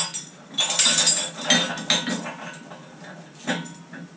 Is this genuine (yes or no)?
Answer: yes